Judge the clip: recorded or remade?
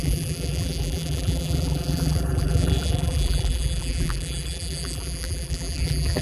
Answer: remade